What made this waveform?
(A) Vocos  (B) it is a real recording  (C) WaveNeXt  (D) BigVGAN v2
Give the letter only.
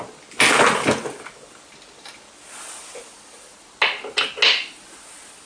B